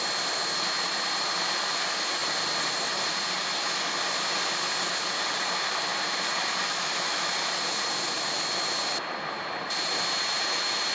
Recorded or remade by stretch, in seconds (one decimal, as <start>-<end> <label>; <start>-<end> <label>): 0.0-6.6 recorded; 6.6-7.3 remade; 7.3-10.9 recorded